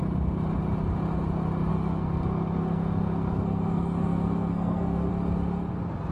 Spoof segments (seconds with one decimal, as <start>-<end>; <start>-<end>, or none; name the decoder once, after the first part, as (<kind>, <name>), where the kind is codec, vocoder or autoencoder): 1.7-5.1 (codec, SNAC)